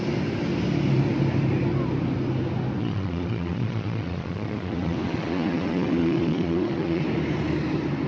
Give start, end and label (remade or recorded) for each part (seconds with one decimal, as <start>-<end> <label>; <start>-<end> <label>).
0.0-2.8 recorded; 2.8-7.0 remade; 7.0-8.1 recorded